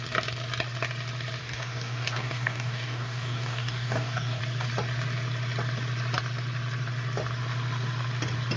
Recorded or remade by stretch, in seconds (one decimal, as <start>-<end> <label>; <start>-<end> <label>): 0.0-1.4 recorded; 1.4-4.4 remade; 4.4-8.6 recorded